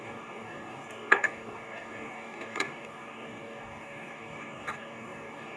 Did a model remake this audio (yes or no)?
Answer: yes